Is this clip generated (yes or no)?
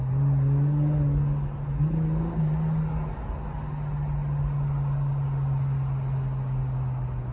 no